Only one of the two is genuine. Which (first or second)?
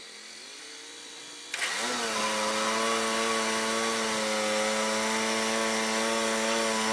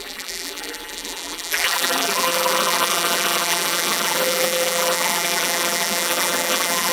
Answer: first